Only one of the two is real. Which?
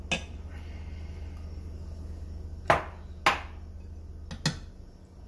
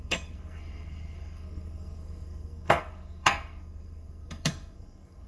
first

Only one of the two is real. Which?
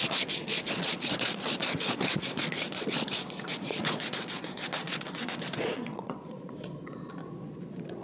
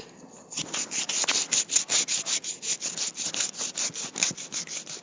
second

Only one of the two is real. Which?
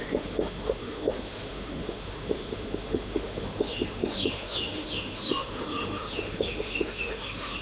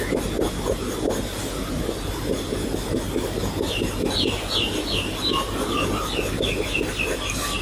second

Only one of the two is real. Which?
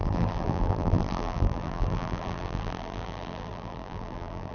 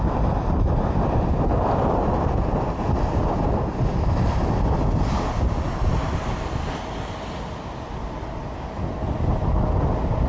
second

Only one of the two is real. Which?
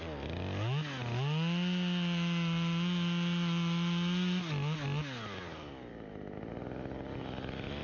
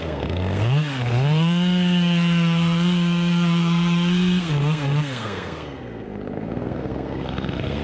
first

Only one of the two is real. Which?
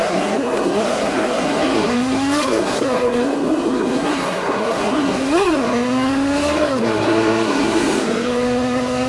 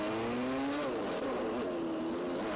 second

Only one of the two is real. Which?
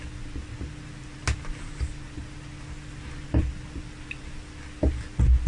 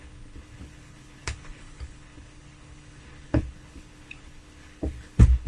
first